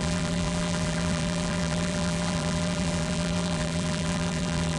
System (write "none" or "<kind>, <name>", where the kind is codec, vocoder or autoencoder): vocoder, BigVGAN v2